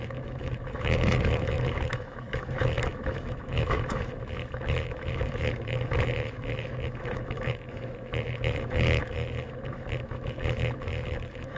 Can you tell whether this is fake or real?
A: fake